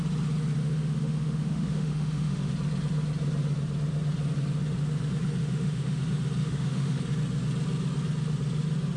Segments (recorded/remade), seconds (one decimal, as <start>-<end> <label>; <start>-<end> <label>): 0.0-0.6 recorded; 0.6-2.5 remade; 2.5-5.4 recorded; 5.4-6.0 remade; 6.0-6.4 recorded; 6.4-7.0 remade; 7.0-9.0 recorded